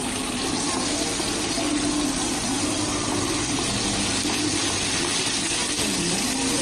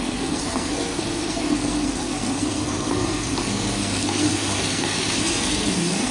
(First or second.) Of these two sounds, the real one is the first